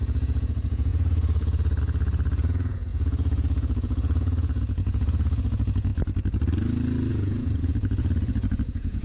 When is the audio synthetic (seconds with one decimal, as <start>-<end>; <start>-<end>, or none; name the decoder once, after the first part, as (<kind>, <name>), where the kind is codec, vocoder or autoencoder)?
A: 0.0-5.9 (vocoder, Vocos); 7.1-9.0